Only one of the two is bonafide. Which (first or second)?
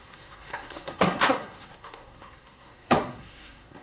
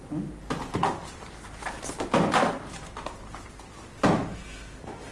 second